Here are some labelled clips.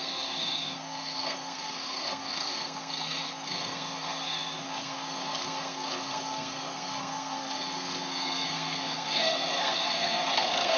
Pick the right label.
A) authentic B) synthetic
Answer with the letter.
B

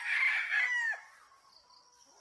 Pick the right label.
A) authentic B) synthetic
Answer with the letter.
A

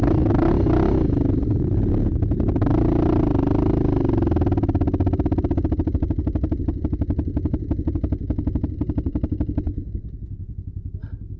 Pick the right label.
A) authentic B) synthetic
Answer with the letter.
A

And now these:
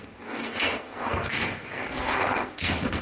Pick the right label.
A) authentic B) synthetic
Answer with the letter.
B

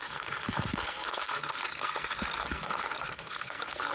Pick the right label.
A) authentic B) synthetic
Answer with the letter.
B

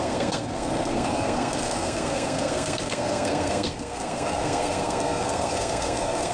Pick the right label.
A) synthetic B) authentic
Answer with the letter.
A